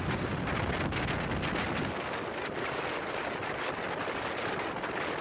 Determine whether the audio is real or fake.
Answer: real